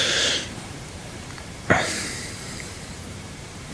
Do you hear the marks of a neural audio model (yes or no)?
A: yes